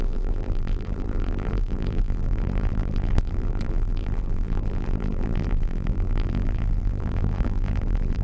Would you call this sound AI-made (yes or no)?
yes